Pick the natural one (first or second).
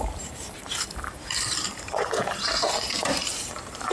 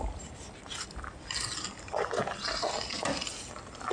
second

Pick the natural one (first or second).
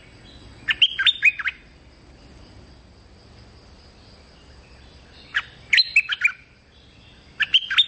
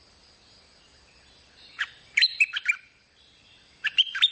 first